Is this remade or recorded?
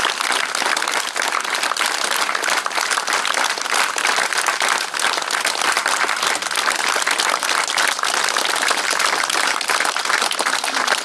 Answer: recorded